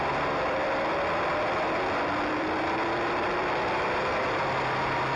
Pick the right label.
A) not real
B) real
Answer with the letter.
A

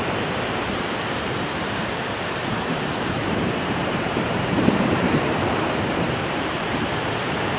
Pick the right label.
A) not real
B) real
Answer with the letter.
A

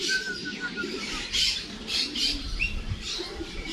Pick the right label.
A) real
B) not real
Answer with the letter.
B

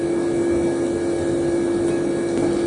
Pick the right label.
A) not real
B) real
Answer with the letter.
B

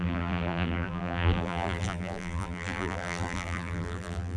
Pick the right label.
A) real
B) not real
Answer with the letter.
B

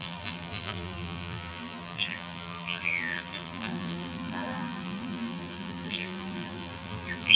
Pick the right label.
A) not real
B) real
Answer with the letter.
A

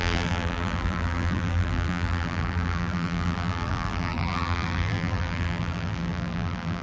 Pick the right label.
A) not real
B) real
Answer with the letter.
A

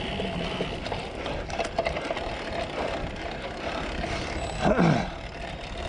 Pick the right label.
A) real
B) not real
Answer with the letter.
A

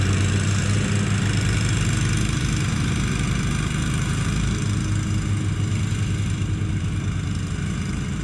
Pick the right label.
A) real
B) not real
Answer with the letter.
A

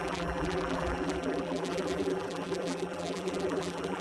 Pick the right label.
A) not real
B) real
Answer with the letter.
A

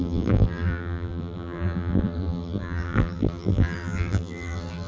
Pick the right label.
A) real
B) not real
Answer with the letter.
B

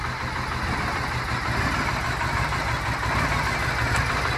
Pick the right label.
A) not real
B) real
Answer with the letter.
B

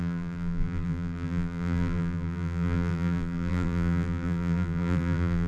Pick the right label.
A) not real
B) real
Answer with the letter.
A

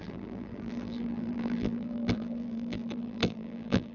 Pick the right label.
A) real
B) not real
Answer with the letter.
B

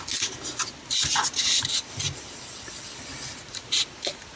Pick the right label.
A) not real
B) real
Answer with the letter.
B